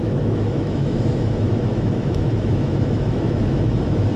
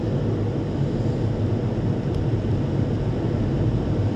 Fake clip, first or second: first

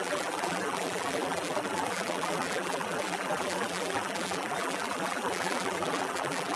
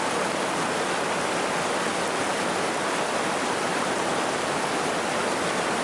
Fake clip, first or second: first